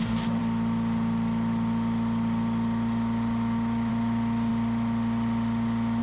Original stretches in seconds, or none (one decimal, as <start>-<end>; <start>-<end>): 0.0-6.0